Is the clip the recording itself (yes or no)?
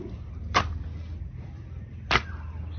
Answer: yes